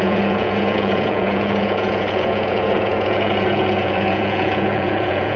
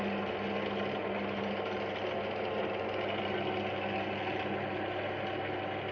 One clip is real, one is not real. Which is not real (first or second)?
first